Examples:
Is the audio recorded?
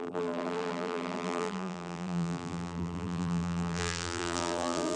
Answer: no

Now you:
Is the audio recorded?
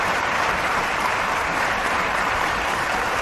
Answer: no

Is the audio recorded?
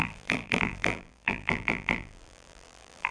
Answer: no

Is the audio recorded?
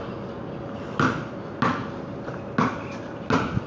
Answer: yes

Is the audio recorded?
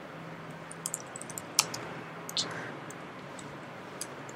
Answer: yes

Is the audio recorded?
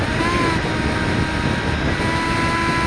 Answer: yes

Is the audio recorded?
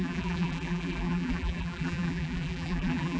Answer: no